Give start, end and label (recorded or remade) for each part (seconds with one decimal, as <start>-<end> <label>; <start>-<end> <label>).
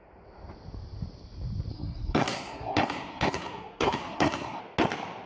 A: 0.0-1.7 recorded; 1.7-4.6 remade; 4.6-5.3 recorded